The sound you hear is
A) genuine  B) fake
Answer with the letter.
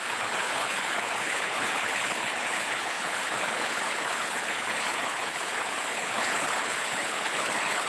B